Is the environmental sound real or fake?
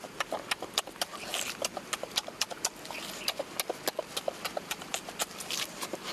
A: real